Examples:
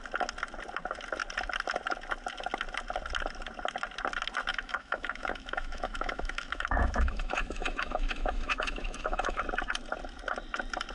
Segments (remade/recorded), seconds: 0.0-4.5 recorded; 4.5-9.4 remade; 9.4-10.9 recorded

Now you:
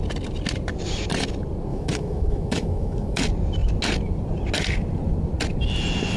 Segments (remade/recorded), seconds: 0.0-1.7 recorded; 1.7-3.2 remade; 3.2-6.2 recorded